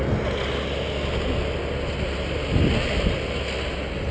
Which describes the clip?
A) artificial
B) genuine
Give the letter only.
B